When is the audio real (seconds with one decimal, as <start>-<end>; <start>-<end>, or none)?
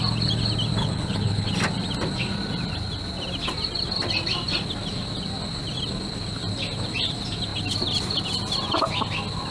0.0-0.8; 1.5-9.5